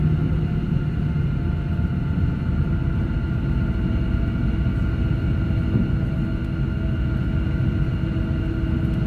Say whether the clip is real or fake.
real